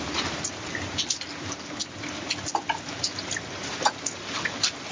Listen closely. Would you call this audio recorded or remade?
recorded